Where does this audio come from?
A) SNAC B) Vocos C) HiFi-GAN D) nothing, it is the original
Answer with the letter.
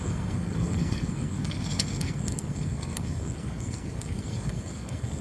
A